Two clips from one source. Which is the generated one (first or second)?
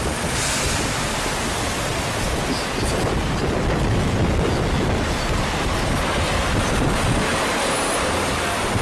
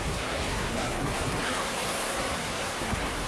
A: second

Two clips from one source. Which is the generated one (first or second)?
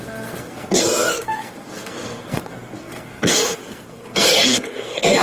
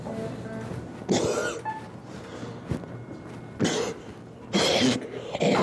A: first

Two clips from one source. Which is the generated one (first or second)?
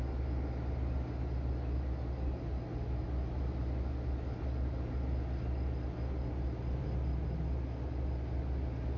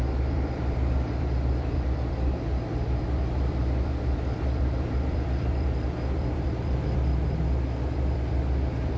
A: second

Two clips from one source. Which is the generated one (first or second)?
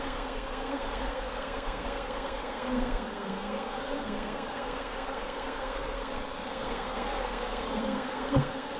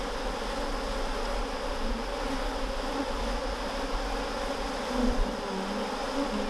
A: first